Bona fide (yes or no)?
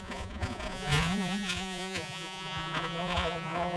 no